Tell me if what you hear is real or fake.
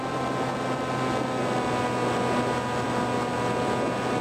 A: real